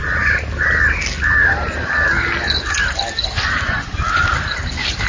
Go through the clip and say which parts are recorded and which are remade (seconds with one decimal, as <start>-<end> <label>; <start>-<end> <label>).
0.0-5.1 recorded